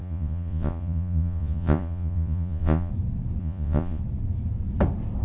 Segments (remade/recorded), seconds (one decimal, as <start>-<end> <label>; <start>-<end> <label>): 0.0-2.9 remade; 2.9-3.4 recorded; 3.4-4.0 remade; 4.0-5.2 recorded

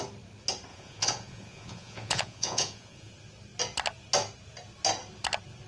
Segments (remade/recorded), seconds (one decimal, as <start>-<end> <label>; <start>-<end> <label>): 0.0-0.7 recorded; 0.7-3.1 remade; 3.1-5.7 recorded

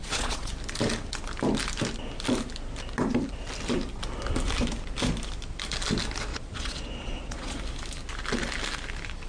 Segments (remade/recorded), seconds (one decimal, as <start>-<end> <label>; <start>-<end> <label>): 0.0-0.5 remade; 0.5-6.3 recorded; 6.3-7.6 remade; 7.6-9.3 recorded

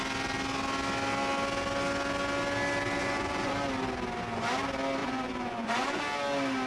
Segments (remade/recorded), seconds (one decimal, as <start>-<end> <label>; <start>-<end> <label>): 0.0-3.0 recorded; 3.0-3.5 remade; 3.5-5.0 recorded; 5.0-6.0 remade; 6.0-6.7 recorded